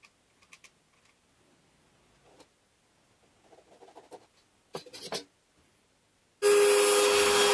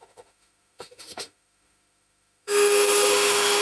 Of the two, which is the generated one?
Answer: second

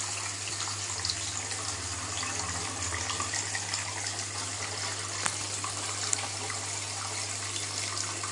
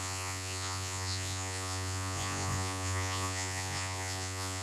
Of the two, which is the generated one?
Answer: second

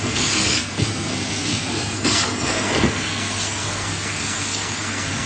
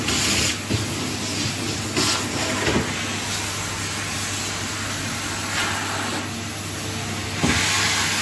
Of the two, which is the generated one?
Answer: first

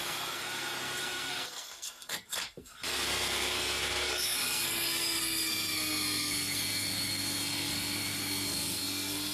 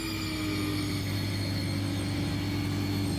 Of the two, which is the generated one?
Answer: first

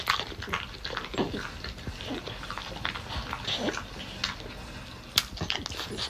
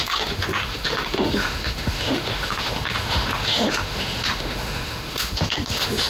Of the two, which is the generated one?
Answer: second